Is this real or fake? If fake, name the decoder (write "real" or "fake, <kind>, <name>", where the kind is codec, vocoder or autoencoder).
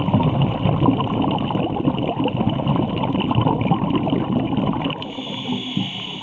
real